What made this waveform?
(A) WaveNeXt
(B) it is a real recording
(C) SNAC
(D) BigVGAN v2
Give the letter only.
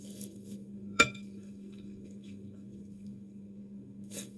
C